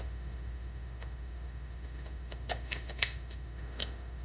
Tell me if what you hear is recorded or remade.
remade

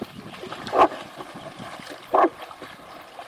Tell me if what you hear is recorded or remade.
recorded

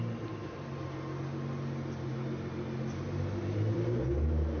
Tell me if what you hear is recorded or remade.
recorded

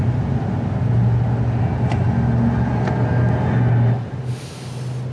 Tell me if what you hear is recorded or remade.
recorded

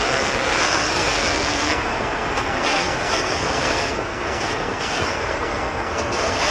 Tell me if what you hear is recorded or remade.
remade